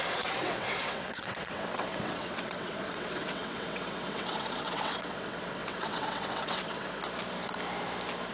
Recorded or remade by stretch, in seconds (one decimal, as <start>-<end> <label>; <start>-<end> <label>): 0.0-7.0 remade; 7.0-8.3 recorded